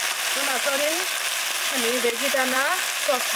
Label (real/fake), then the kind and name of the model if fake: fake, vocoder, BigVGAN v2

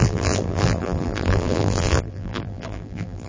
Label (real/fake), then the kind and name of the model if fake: fake, vocoder, BigVGAN v2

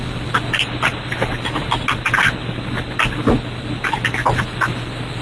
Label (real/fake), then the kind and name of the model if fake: real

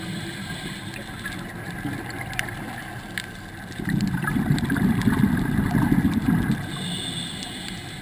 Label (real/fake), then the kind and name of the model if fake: real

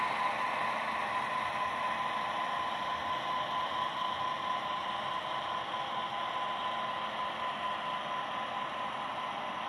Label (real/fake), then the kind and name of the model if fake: real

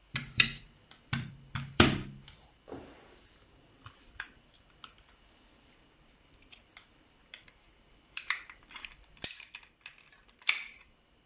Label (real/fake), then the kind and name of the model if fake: fake, vocoder, BigVGAN v2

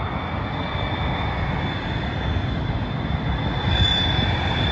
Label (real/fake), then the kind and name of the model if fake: real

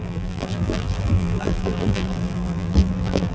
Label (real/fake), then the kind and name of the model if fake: fake, vocoder, BigVGAN v2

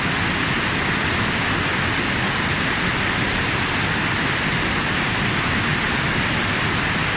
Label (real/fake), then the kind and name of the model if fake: real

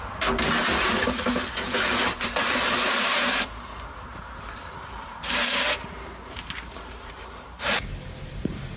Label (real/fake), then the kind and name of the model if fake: fake, vocoder, BigVGAN v2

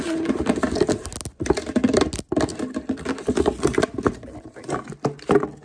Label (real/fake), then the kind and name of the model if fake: real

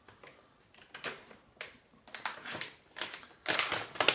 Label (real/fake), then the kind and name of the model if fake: real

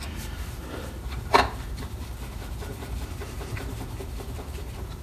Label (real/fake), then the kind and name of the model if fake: fake, vocoder, BigVGAN v2